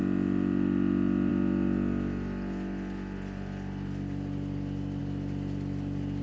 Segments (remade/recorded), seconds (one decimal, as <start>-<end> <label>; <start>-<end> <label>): 0.0-6.2 recorded